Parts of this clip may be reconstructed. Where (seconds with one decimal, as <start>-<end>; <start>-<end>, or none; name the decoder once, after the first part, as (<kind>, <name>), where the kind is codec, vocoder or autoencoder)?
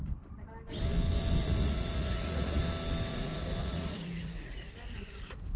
1.4-2.6 (vocoder, Vocos); 3.1-4.7